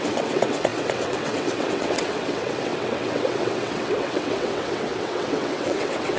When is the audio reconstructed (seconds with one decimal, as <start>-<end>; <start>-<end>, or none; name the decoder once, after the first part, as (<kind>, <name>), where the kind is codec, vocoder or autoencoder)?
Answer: 0.0-6.2 (vocoder, WaveNeXt)

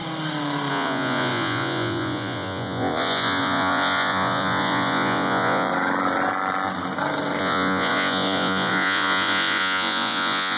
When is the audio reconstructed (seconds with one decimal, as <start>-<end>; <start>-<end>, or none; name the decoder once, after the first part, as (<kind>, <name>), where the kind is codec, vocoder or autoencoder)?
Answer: 0.7-5.7 (vocoder, Vocos); 7.4-10.6

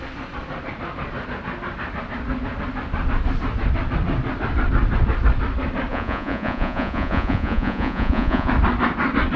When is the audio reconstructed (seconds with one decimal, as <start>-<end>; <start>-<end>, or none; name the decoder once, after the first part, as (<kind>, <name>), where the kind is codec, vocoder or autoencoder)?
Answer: 5.9-8.5 (vocoder, Vocos)

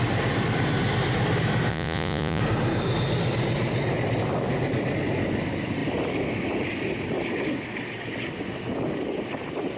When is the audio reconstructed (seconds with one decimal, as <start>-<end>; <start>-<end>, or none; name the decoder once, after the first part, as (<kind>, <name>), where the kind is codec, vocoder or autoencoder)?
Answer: 1.7-2.4 (vocoder, Vocos)

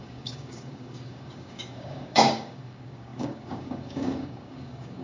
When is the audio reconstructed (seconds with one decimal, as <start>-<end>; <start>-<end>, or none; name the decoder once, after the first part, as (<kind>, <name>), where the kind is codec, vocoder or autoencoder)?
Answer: 0.0-5.0 (codec, DAC)